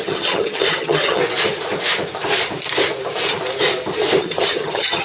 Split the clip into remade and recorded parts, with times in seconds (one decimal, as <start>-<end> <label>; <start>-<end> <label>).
0.0-1.2 remade; 1.2-4.2 recorded; 4.2-5.0 remade